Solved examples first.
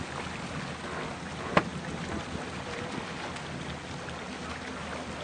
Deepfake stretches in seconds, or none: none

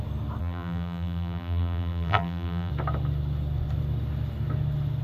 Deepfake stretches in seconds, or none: 0.4-2.7 (vocoder, BigVGAN v2)

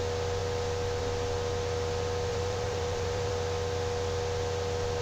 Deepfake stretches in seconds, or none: 2.3-3.3 (vocoder, BigVGAN v2)

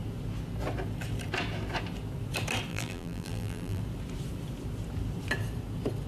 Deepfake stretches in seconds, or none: 2.7-3.8 (vocoder, BigVGAN v2)

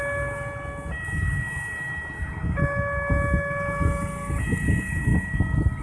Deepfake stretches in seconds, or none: none

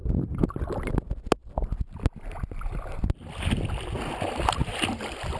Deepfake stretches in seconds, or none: none

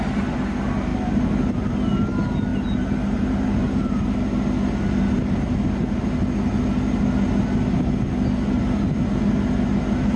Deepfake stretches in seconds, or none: 2.5-4.1 (vocoder, BigVGAN v2)

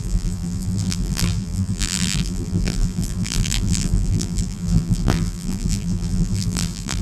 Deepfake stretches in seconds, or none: 0.0-7.0 (vocoder, BigVGAN v2)